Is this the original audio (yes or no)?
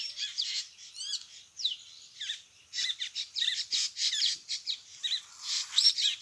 no